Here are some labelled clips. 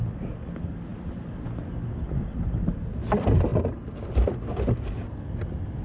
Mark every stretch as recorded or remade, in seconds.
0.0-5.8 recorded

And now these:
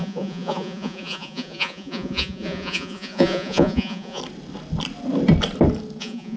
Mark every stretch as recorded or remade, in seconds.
0.0-4.2 remade; 4.2-6.0 recorded; 6.0-6.4 remade

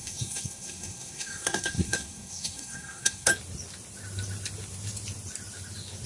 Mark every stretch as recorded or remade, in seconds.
0.0-3.3 remade; 3.3-6.1 recorded

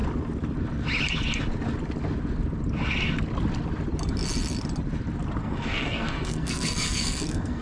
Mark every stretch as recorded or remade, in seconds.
0.0-5.4 recorded; 5.4-7.6 remade

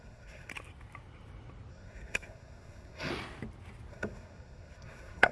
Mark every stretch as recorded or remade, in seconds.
0.0-0.5 remade; 0.5-1.7 recorded; 1.7-3.1 remade; 3.1-3.9 recorded; 3.9-5.3 remade

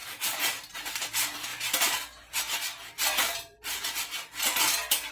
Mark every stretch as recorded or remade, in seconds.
0.0-0.9 remade; 0.9-1.5 recorded; 1.5-2.4 remade; 2.4-3.2 recorded; 3.2-4.6 remade; 4.6-5.1 recorded